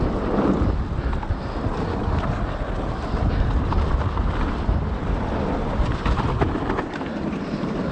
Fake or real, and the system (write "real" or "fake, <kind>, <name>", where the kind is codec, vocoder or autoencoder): real